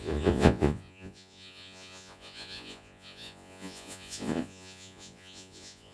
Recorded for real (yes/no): no